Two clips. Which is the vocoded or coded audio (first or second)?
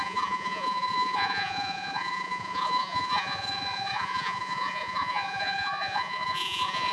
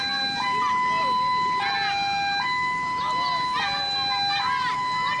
first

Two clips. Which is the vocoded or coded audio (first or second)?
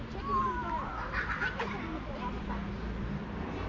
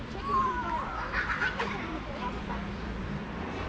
second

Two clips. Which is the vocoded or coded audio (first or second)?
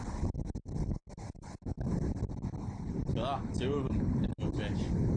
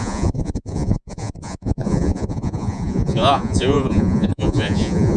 second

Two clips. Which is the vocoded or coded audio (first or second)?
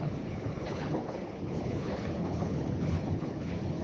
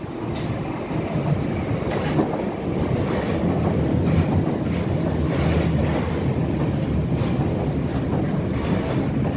first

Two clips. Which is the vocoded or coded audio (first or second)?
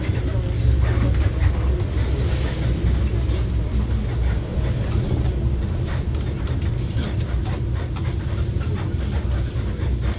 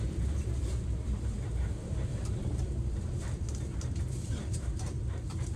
second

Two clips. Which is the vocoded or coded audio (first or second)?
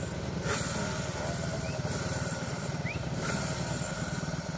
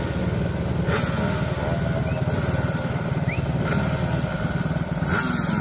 first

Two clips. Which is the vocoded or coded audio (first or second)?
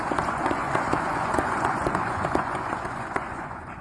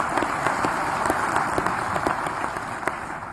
first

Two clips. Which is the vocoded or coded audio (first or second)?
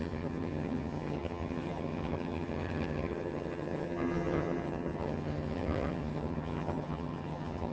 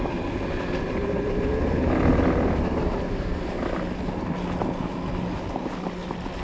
first